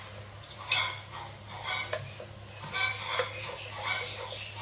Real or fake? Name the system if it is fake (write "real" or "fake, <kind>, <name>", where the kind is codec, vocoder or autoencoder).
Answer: real